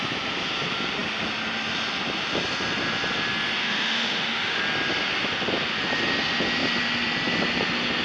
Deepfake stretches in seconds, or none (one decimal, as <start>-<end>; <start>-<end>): 3.6-4.6